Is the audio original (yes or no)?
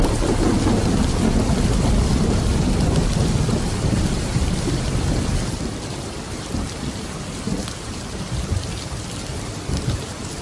yes